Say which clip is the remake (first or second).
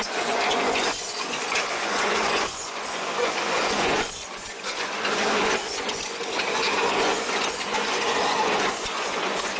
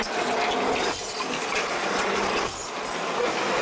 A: first